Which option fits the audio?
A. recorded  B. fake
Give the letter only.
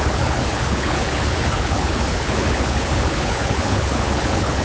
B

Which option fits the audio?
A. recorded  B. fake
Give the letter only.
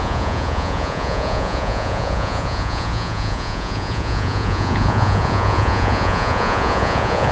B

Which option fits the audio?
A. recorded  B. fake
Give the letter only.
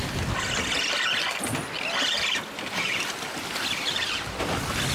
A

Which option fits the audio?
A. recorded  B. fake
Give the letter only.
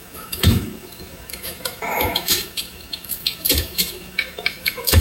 B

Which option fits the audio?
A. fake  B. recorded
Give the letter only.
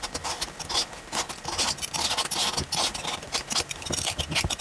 B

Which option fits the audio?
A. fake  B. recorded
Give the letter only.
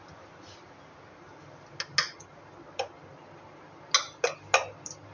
B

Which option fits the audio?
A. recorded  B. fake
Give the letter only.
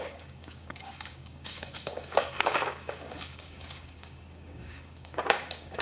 B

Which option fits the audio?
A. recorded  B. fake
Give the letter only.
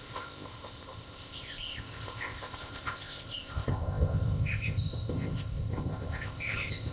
B